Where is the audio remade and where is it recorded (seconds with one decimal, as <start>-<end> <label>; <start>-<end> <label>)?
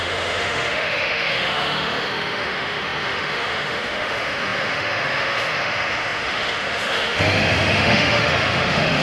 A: 0.0-9.0 remade